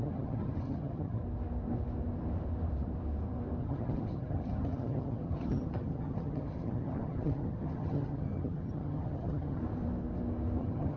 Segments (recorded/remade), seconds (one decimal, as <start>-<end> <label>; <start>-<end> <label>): 0.0-1.2 remade; 1.2-3.6 recorded; 3.6-9.6 remade; 9.6-10.6 recorded; 10.6-11.0 remade